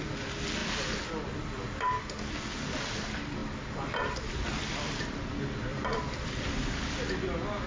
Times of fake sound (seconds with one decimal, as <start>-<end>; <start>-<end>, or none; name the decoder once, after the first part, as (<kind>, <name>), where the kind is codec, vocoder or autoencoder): 5.7-6.9 (vocoder, BigVGAN v2)